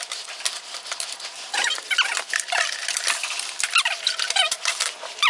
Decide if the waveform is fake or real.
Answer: real